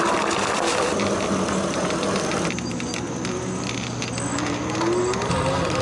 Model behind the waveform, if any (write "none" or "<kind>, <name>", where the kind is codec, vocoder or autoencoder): none